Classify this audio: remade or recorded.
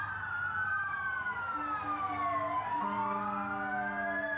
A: recorded